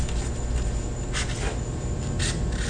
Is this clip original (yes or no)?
yes